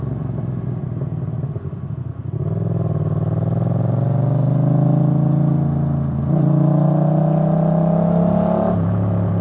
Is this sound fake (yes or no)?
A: no